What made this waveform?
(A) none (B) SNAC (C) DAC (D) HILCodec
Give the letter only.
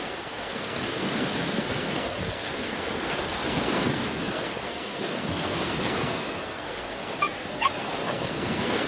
B